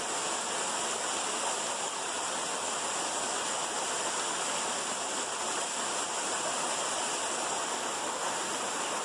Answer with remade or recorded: recorded